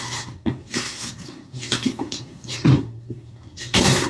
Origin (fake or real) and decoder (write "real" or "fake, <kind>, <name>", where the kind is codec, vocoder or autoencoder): fake, codec, SNAC